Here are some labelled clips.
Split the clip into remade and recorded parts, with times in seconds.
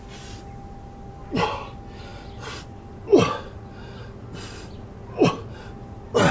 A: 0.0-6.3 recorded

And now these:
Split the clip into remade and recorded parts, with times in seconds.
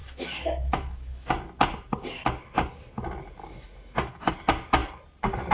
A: 0.0-1.3 remade; 1.3-3.4 recorded; 3.4-4.3 remade; 4.3-5.5 recorded